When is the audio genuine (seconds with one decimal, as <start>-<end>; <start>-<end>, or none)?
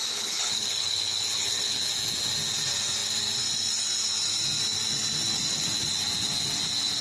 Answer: 1.9-7.0